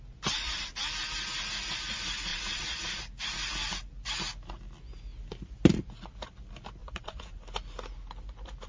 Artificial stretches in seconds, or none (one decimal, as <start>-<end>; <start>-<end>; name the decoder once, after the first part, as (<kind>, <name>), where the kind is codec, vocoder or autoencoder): 2.3-3.0 (vocoder, Vocos); 6.8-7.4